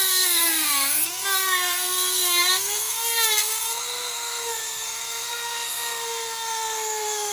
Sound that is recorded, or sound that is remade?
remade